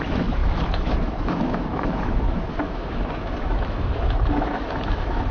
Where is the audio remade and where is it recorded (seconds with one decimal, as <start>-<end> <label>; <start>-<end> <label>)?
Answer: 0.0-5.3 remade